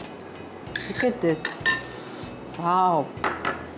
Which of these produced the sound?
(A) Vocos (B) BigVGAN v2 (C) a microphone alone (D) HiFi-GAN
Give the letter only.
C